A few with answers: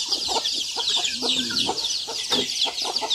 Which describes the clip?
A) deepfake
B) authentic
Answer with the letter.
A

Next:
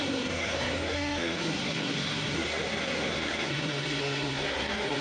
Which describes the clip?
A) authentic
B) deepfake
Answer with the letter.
B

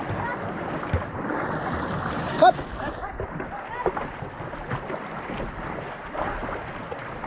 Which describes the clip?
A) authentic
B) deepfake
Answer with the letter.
A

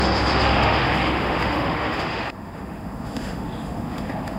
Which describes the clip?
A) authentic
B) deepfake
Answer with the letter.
B